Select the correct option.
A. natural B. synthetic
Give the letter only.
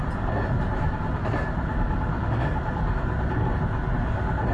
A